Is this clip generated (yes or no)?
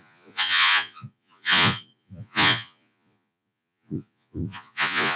yes